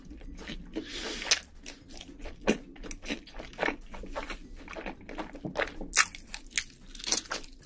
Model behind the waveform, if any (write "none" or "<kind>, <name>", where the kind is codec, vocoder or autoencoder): none